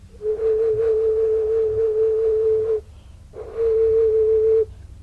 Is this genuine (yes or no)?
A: yes